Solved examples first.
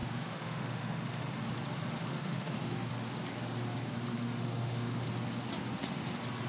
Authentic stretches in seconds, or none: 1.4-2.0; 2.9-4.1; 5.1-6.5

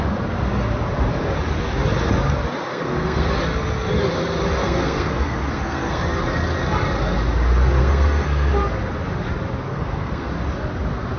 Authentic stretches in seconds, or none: 0.0-2.7; 3.3-4.6; 6.0-7.8; 8.5-9.7; 10.3-11.2

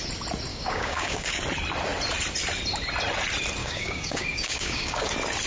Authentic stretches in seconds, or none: 0.0-0.5; 1.4-3.6; 5.1-5.5